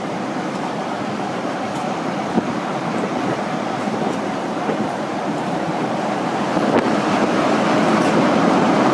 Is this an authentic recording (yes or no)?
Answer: no